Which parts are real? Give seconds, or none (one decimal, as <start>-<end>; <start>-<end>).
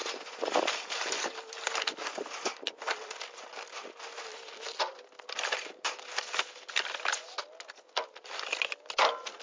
0.0-9.4